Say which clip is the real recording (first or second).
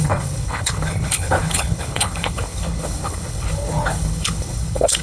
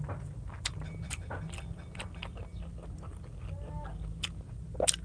second